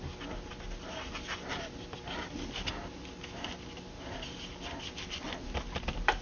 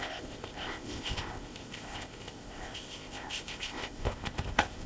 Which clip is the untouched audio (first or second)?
first